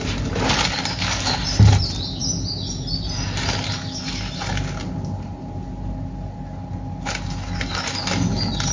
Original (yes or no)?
yes